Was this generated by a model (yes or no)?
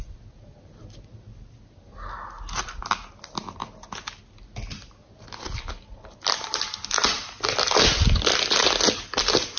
no